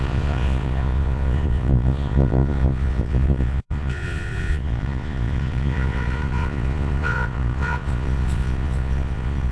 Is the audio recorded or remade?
remade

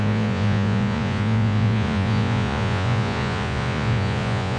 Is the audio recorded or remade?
remade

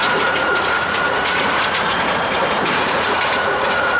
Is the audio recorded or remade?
remade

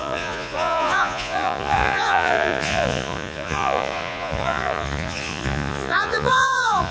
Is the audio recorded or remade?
remade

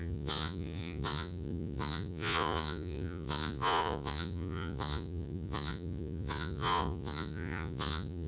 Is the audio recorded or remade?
remade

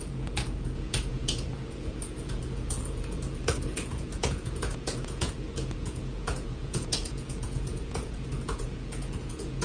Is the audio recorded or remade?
remade